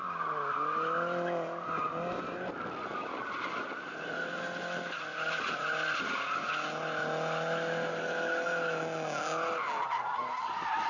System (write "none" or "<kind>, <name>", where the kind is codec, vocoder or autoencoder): none